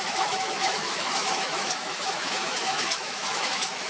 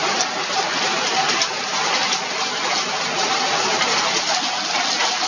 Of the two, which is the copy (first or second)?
first